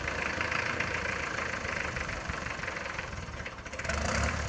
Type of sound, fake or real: fake